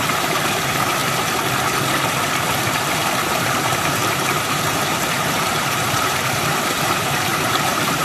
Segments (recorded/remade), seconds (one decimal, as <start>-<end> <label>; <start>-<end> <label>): 0.0-1.0 remade; 1.0-3.3 recorded; 3.3-8.0 remade